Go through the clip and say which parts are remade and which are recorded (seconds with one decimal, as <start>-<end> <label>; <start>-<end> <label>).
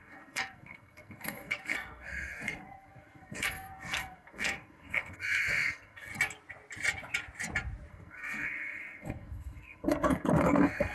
0.0-6.1 remade; 6.1-7.9 recorded; 7.9-10.9 remade